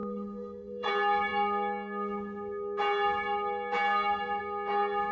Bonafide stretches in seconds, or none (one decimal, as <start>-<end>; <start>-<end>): 0.9-5.1